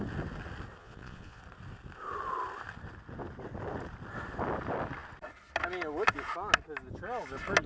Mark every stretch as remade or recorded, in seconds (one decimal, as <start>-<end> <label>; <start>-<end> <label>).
0.0-0.8 recorded; 0.8-1.4 remade; 1.4-7.7 recorded